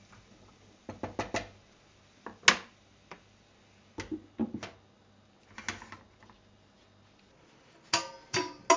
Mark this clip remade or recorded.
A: recorded